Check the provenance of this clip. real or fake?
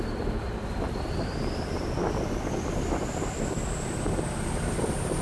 real